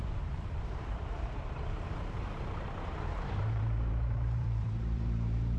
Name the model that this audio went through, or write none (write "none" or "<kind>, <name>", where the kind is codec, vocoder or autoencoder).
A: vocoder, BigVGAN v2